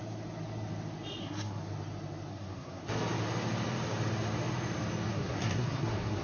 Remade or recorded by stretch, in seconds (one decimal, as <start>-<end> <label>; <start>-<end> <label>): 0.0-1.2 recorded; 1.2-1.6 remade; 1.6-2.3 recorded; 2.3-2.8 remade; 2.8-5.1 recorded; 5.1-6.2 remade